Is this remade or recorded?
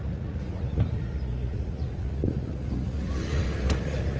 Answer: remade